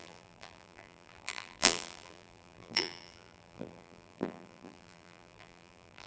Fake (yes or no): yes